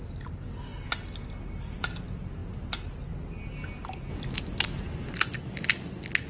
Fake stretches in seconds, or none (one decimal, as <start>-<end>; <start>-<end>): none